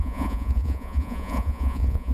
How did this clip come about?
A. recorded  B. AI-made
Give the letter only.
B